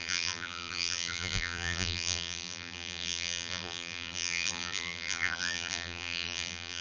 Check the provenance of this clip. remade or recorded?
remade